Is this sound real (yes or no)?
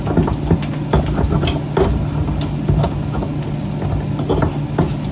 yes